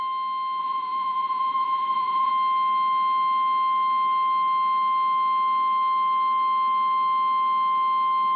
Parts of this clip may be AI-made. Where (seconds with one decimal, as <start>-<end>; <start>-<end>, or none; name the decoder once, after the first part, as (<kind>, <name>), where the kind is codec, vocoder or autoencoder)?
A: 0.6-2.3 (vocoder, Vocos)